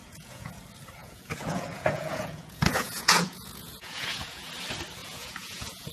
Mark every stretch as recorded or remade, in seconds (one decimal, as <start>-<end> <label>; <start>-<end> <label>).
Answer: 0.0-0.6 remade; 0.6-1.0 recorded; 1.0-4.5 remade; 4.5-5.0 recorded; 5.0-5.9 remade